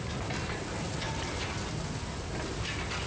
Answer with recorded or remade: recorded